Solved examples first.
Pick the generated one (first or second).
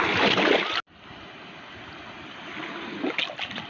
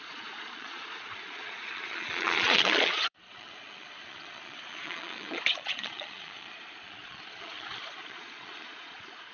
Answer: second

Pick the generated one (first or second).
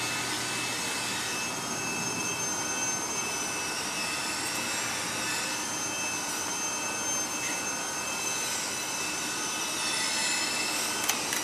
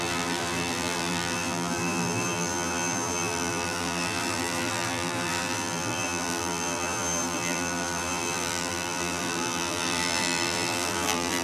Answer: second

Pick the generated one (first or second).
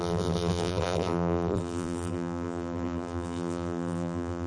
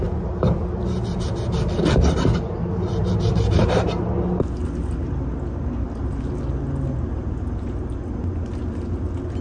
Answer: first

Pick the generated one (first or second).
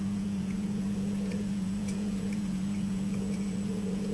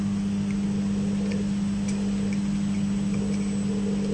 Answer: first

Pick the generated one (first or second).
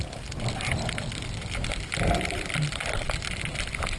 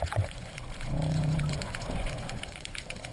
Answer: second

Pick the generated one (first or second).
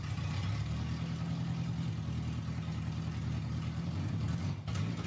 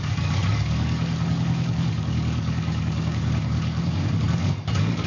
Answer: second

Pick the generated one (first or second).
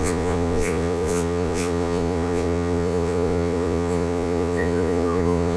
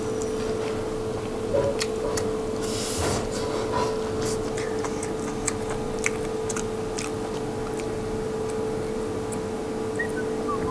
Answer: first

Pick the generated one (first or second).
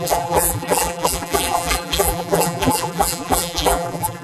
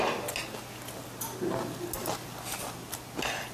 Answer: first